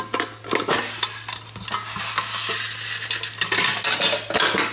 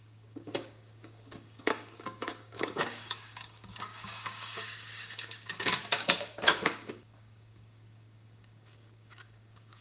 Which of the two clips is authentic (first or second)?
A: first